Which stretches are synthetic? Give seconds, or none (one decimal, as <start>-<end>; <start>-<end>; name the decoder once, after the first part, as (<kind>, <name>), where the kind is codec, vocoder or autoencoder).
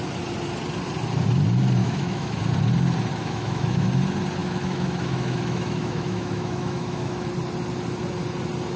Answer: 1.8-2.4 (autoencoder, DAC-VAE); 3.2-3.9; 4.4-7.3